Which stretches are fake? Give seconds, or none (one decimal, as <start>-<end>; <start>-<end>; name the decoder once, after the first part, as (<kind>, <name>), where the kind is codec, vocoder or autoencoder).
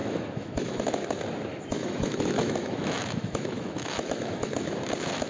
0.0-0.9 (autoencoder, DAC-VAE); 1.5-4.7